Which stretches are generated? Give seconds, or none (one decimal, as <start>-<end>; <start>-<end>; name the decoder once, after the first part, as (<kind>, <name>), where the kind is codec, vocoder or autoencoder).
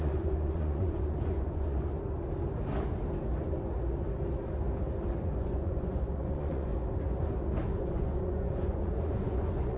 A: 0.0-1.9 (vocoder, Vocos); 5.2-6.7; 7.8-9.8